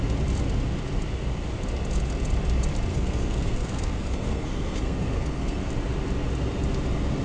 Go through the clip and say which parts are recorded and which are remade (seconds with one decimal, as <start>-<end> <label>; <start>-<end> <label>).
0.0-2.9 recorded; 2.9-5.7 remade; 5.7-7.2 recorded